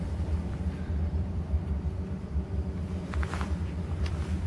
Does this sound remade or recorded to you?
remade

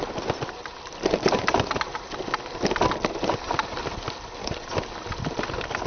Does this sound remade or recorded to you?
recorded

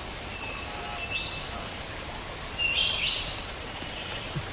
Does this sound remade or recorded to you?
recorded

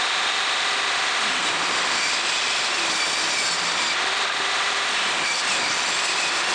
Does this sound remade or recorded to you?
remade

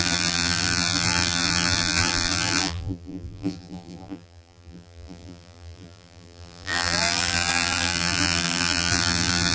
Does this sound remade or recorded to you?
remade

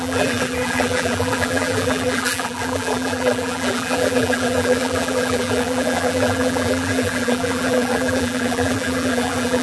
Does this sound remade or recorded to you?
remade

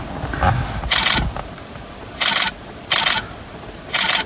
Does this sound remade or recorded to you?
remade